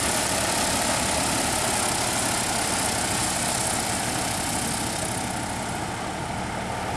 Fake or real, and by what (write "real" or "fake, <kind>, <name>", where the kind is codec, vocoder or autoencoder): real